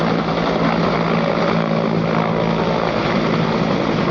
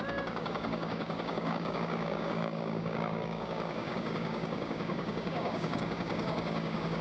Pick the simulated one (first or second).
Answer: second